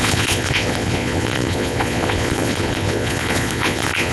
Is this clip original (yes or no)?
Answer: no